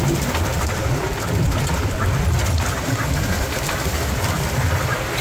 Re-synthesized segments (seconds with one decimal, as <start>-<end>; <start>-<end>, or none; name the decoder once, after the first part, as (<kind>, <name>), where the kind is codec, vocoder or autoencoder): none